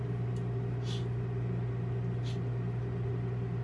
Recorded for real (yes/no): yes